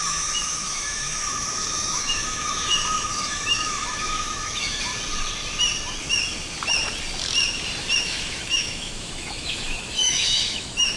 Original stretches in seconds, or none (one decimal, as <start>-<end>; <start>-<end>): 4.9-8.0